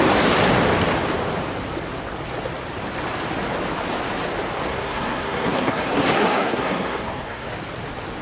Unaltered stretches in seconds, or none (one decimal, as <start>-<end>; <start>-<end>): 0.0-4.7; 7.5-8.2